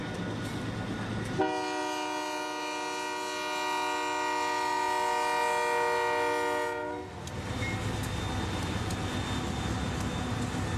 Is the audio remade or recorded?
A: recorded